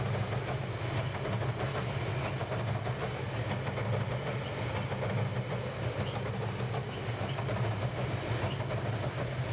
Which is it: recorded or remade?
recorded